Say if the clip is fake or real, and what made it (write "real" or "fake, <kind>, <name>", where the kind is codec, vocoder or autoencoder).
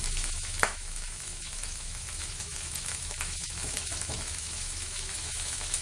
fake, autoencoder, DAC-VAE